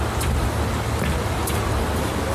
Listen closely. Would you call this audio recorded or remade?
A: recorded